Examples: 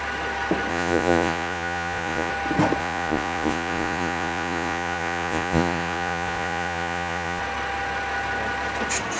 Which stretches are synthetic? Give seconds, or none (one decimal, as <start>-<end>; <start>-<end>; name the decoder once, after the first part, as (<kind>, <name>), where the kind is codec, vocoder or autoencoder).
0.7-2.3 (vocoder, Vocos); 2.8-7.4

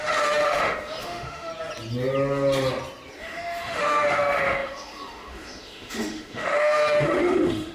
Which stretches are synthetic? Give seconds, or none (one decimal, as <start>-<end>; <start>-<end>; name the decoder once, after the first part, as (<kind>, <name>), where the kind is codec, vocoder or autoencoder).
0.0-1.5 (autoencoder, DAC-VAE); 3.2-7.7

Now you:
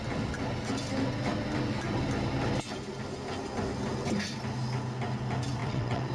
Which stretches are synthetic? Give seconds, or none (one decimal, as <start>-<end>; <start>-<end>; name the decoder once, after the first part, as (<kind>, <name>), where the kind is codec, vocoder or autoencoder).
5.6-6.1 (vocoder, WaveNeXt)